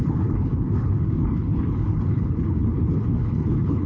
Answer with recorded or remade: remade